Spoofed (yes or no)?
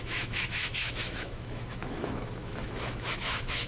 yes